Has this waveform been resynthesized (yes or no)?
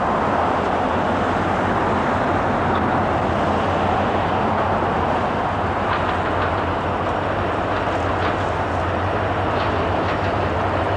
no